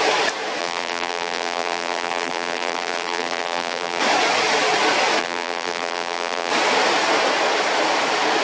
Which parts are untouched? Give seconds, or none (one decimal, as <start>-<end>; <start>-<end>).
0.0-0.6; 4.0-5.2; 6.5-8.4